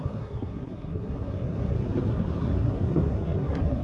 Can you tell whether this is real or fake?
fake